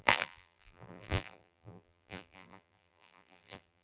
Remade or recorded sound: remade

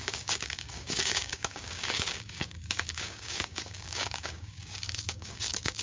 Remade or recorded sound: remade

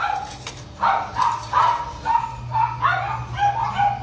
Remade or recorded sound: recorded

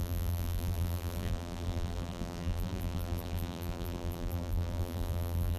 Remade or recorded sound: remade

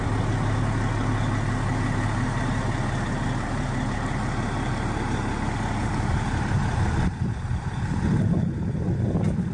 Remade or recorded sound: recorded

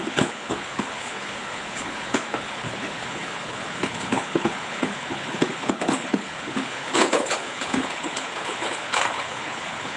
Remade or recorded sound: remade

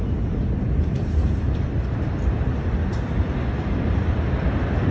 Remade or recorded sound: recorded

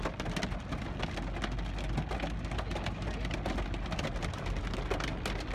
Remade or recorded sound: recorded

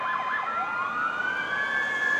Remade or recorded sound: recorded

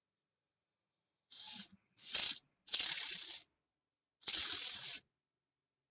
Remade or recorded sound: recorded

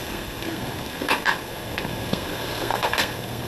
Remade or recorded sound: remade